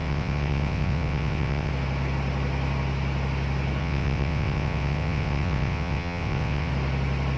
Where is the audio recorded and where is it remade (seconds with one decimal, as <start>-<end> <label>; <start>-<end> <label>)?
0.0-1.7 remade; 1.7-3.8 recorded; 3.8-6.7 remade; 6.7-7.4 recorded

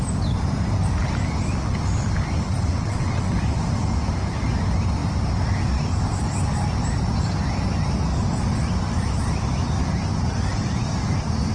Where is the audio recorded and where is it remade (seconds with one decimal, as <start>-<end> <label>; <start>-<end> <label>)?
0.0-2.7 recorded; 2.7-3.3 remade; 3.3-11.5 recorded